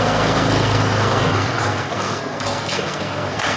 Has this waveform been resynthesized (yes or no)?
yes